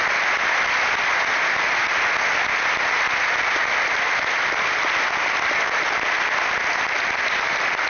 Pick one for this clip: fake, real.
real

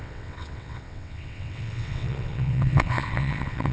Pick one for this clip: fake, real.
fake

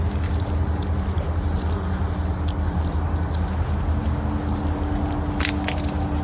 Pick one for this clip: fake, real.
real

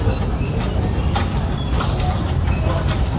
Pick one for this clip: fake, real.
real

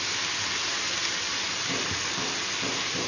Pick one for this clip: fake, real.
real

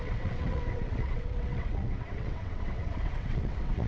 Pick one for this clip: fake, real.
fake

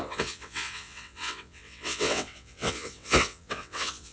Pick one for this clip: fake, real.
fake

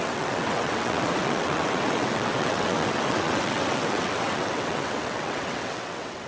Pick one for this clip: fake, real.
fake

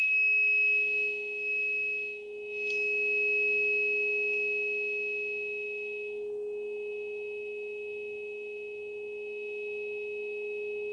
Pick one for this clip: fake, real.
real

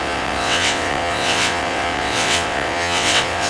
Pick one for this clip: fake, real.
fake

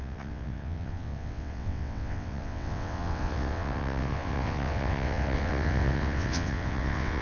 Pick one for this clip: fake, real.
fake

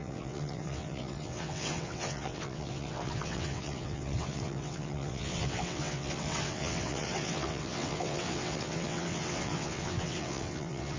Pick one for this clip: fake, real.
fake